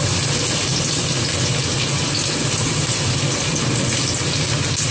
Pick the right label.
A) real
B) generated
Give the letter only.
A